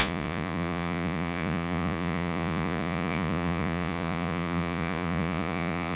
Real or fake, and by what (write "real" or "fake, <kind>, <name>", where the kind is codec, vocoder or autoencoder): fake, vocoder, Vocos